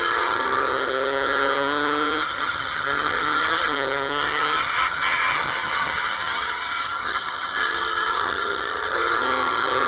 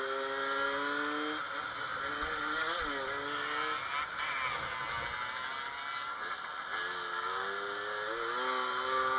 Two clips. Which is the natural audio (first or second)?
second